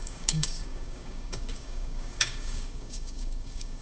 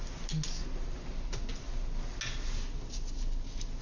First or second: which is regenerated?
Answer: first